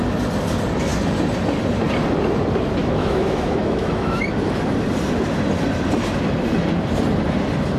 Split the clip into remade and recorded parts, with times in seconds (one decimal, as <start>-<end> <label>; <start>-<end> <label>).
0.0-2.8 recorded; 2.8-4.2 remade; 4.2-7.8 recorded